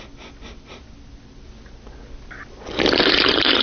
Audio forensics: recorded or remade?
recorded